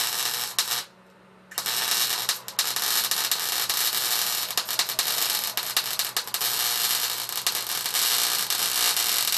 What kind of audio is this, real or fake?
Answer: real